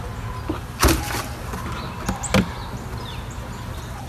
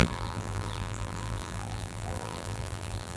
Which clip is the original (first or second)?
first